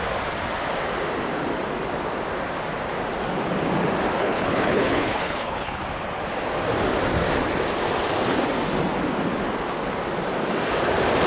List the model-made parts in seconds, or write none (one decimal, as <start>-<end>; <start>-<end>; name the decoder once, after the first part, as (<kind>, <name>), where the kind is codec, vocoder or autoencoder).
4.2-5.8 (codec, HILCodec)